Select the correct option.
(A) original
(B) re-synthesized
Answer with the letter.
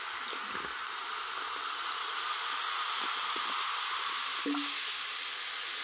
A